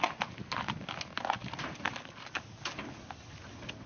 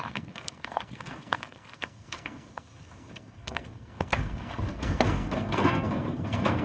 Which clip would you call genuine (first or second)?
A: first